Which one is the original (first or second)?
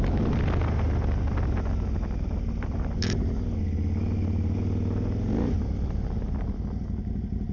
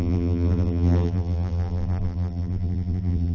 first